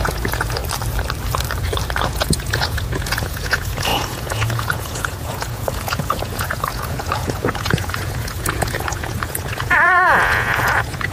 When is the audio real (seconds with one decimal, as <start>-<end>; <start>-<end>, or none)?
0.6-2.0